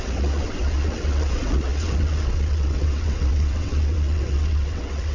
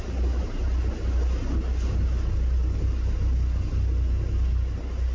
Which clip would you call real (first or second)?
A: second